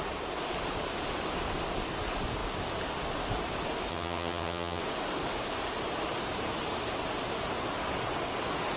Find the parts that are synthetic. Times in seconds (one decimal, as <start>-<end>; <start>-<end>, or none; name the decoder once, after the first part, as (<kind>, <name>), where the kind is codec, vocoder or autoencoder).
3.9-4.8 (vocoder, HiFi-GAN)